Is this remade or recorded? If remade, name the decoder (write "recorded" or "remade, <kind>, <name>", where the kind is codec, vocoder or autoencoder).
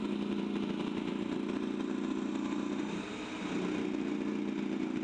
remade, vocoder, BigVGAN v2